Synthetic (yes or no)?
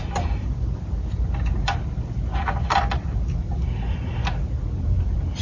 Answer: no